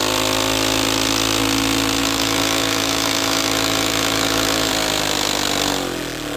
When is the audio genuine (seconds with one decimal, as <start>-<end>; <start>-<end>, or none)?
0.0-2.0; 4.7-6.4